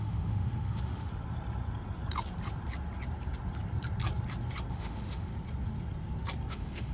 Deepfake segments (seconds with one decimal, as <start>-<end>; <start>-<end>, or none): 0.0-1.1; 4.7-5.3; 6.5-6.9